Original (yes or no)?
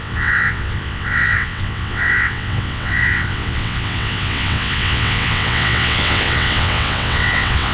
no